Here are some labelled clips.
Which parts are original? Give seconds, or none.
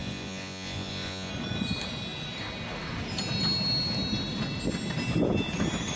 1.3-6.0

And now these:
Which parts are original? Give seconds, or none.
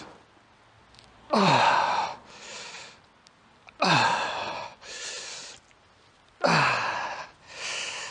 0.0-4.7; 5.4-8.1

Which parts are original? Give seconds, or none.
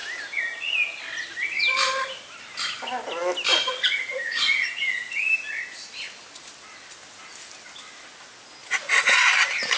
0.0-3.5; 5.2-8.6; 9.3-9.8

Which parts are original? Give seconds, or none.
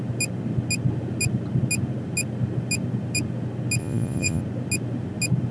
0.0-3.8; 4.4-5.5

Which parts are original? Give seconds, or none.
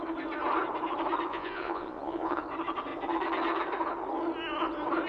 0.0-1.3; 2.4-5.1